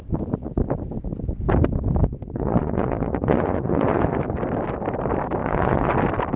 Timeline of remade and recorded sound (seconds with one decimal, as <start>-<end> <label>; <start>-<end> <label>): 0.0-2.0 recorded; 2.0-4.0 remade; 4.0-5.4 recorded; 5.4-5.9 remade; 5.9-6.4 recorded